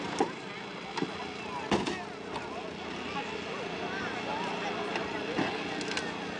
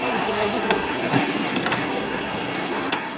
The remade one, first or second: second